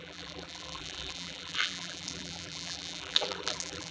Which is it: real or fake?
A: fake